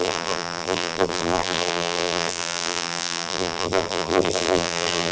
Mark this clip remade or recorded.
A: remade